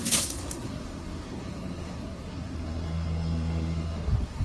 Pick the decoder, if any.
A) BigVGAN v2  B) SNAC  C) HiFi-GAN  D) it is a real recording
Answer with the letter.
B